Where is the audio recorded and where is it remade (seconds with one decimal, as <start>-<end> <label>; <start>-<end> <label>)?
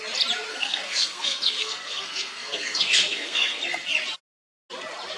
0.0-0.5 recorded; 0.5-3.6 remade; 3.6-5.2 recorded